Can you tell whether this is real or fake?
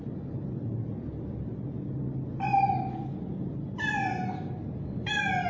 real